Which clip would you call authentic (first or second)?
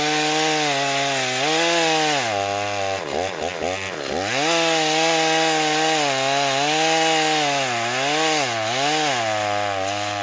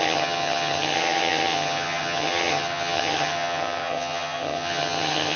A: first